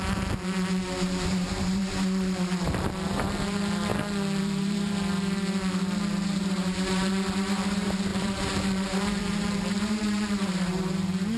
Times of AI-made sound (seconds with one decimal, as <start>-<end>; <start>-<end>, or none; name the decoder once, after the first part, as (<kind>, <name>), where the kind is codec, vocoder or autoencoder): 0.0-3.9 (vocoder, BigVGAN v2); 4.4-11.4